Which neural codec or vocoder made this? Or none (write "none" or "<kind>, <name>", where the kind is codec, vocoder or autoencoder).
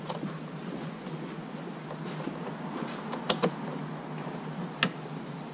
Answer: none